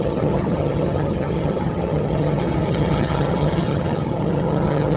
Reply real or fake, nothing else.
fake